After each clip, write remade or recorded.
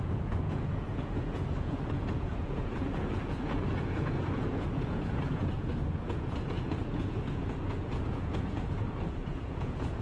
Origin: remade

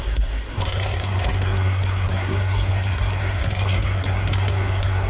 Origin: remade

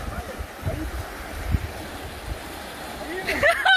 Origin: remade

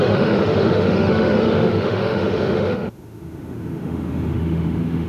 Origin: remade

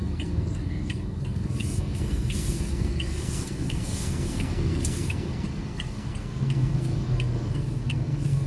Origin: remade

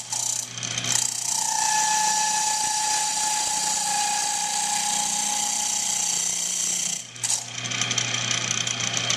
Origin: recorded